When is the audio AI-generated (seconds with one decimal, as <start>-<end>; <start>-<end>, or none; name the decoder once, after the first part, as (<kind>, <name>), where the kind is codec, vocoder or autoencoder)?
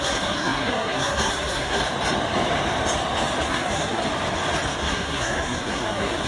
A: 0.0-1.8 (codec, SNAC); 3.5-4.0; 4.8-6.3